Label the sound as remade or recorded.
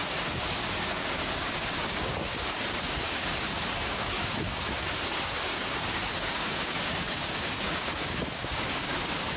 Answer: remade